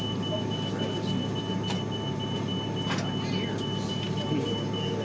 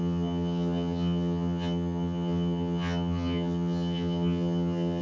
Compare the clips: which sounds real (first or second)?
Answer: first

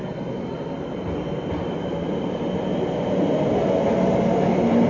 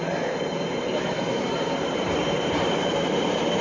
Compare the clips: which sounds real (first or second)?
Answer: first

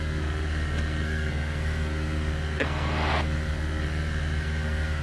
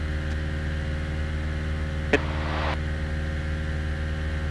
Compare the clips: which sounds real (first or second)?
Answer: second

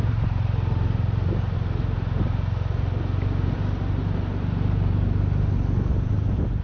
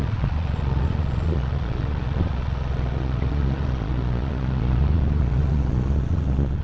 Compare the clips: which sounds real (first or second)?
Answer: first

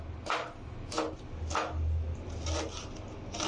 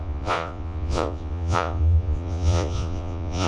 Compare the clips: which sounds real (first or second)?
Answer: first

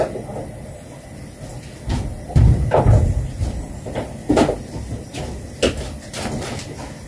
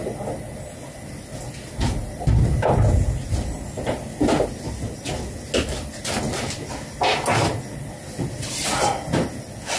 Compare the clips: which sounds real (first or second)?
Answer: second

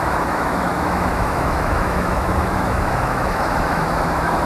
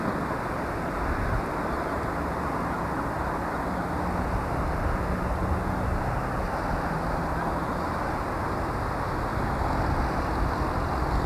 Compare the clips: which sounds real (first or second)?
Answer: second